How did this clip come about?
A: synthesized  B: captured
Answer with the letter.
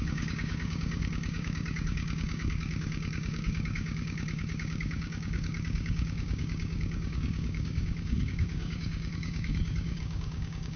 A